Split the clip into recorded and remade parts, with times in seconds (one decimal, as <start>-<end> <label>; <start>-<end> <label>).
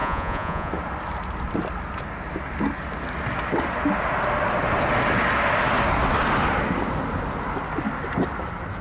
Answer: 0.0-0.7 remade; 0.7-8.8 recorded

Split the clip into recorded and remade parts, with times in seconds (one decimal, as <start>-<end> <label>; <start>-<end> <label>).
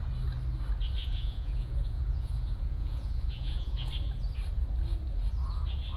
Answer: 0.0-1.0 recorded; 1.0-3.9 remade; 3.9-6.0 recorded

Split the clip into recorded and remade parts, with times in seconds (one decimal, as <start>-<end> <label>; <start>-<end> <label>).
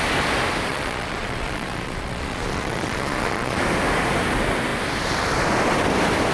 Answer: 0.0-0.7 recorded; 0.7-3.6 remade; 3.6-6.3 recorded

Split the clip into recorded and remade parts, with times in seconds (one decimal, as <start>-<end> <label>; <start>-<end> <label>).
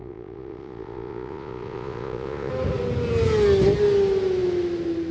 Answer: 0.0-2.5 remade; 2.5-5.1 recorded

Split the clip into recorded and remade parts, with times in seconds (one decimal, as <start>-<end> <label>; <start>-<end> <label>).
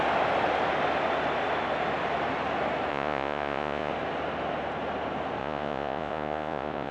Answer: 0.0-2.9 recorded; 2.9-3.9 remade; 3.9-5.4 recorded; 5.4-6.9 remade